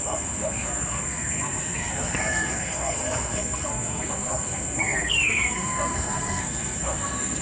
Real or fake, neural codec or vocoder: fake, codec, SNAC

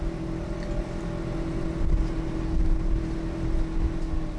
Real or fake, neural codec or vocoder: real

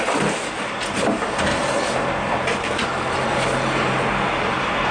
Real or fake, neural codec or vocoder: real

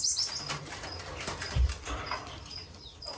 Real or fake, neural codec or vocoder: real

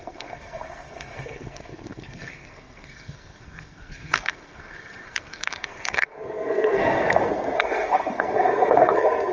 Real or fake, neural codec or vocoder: fake, codec, SNAC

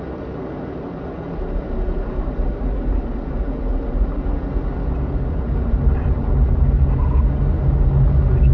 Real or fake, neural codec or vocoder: real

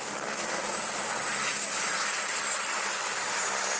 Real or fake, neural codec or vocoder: real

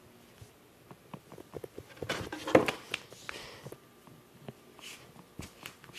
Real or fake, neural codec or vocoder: real